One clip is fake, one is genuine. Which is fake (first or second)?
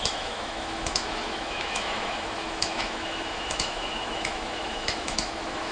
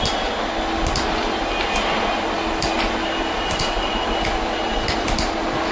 first